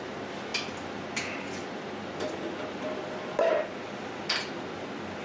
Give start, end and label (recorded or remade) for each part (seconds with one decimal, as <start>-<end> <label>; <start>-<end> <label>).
0.0-5.2 recorded